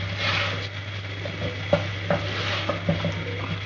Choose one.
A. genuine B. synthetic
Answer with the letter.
A